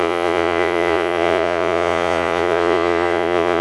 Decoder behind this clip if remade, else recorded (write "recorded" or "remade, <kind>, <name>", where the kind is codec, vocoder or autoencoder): remade, vocoder, Vocos